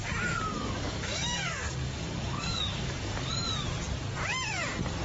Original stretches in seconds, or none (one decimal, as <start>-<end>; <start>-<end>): 0.0-0.5; 3.3-5.0